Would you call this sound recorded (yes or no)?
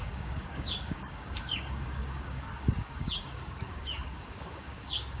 no